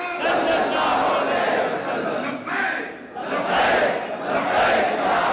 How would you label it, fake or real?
real